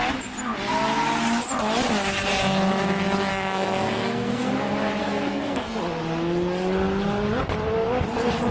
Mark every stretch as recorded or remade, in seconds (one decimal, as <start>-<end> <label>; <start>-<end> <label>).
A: 0.0-3.3 recorded; 3.3-4.5 remade; 4.5-5.0 recorded; 5.0-5.8 remade; 5.8-8.5 recorded